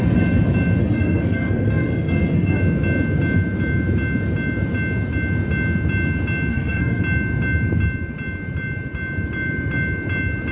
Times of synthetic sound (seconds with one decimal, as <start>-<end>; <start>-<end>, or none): 0.8-2.6; 6.5-7.0